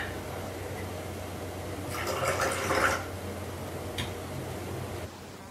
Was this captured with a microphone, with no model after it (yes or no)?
yes